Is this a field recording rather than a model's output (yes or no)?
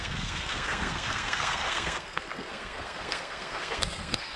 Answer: no